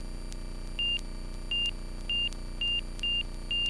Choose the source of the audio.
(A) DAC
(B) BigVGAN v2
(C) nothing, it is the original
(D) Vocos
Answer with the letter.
C